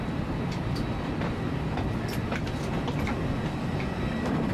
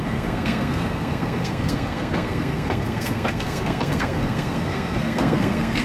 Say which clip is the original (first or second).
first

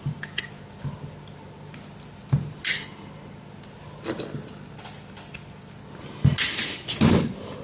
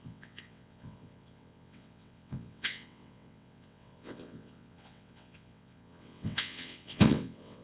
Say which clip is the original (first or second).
first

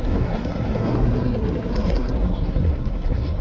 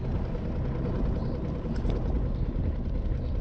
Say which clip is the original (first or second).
second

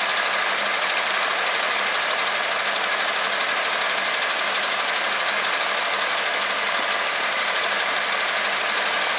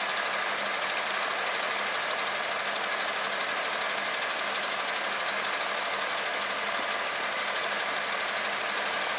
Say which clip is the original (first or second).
second